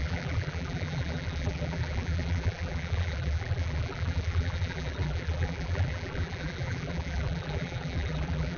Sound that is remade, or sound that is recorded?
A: remade